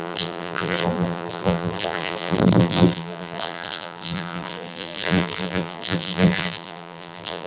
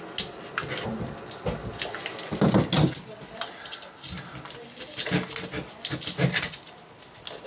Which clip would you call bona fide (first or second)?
second